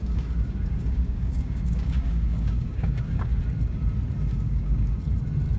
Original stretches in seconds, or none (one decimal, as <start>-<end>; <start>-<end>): 3.4-4.3; 5.0-5.6